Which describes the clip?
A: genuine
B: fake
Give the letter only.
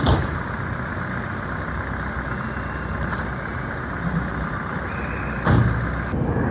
A